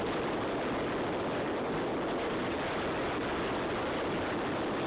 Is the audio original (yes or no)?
yes